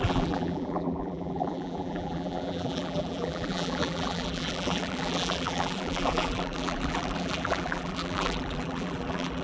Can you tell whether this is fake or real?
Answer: fake